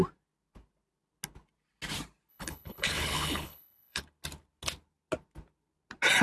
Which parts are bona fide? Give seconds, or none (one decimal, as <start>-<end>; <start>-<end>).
0.0-2.3; 4.0-6.2